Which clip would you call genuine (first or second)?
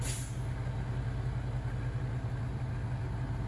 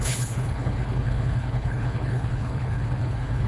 first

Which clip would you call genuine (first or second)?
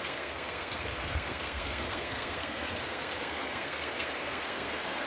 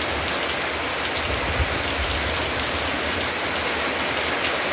second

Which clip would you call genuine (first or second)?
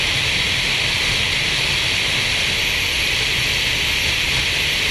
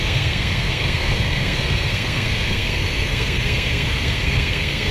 first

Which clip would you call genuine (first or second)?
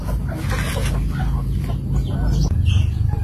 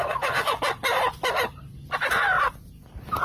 first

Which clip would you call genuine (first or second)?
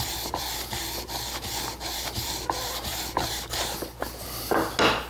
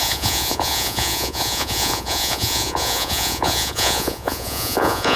first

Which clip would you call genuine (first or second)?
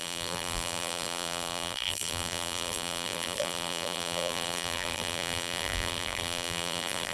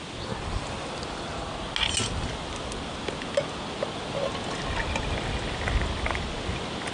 second